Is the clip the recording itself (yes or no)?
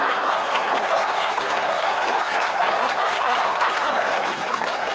no